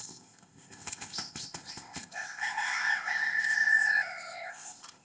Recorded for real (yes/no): no